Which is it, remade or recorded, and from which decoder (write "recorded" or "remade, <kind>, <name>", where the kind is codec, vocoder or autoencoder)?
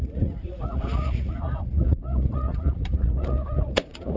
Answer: remade, vocoder, Vocos